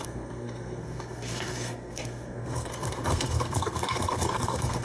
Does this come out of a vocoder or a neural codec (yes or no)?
yes